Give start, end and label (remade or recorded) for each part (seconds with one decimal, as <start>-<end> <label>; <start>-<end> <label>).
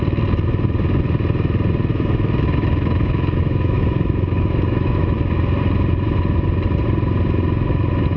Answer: 0.0-1.9 recorded; 1.9-5.2 remade; 5.2-8.2 recorded